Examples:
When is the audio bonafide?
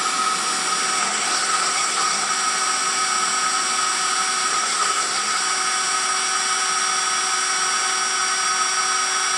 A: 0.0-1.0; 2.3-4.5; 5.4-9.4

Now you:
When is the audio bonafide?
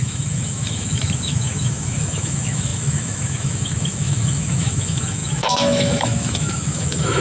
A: none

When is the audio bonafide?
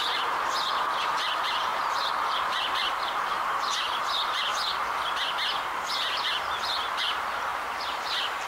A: 4.5-7.0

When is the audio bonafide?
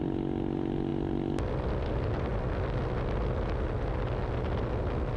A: 0.0-5.2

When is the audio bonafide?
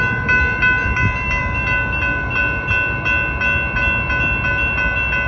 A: 0.0-5.3